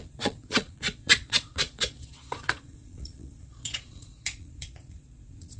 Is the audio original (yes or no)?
no